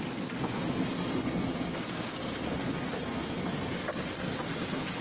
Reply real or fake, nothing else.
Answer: real